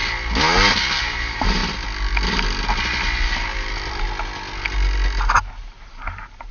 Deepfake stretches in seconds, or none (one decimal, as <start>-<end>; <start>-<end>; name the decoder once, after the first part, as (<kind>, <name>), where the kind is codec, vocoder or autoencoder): 1.0-1.6 (vocoder, BigVGAN v2); 5.5-6.5